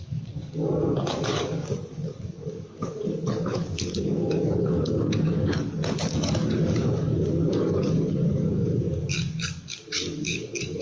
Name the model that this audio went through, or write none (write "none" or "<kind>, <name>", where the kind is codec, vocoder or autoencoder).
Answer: codec, DAC